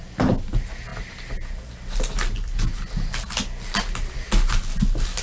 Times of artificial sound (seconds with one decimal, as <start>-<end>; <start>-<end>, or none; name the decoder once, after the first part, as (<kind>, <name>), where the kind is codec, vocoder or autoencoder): none